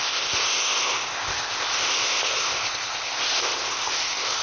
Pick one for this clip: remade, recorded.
remade